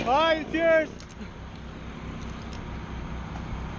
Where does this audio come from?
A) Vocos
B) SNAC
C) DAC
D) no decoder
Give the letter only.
D